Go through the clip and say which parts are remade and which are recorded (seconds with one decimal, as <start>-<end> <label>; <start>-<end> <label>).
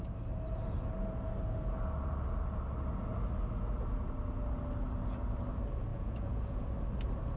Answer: 0.0-5.9 recorded; 5.9-6.7 remade; 6.7-7.4 recorded